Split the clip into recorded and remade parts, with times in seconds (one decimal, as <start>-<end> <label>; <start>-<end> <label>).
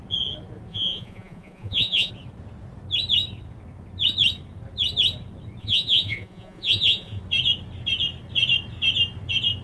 0.0-0.7 recorded; 0.7-2.1 remade; 2.1-5.6 recorded; 5.6-7.2 remade; 7.2-9.6 recorded